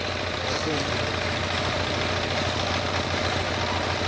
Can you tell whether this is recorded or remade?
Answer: recorded